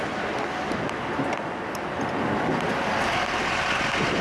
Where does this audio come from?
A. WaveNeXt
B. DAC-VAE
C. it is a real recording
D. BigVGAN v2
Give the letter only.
C